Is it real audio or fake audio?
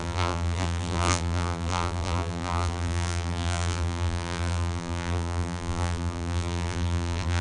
fake